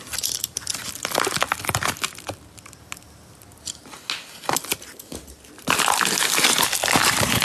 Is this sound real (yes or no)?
yes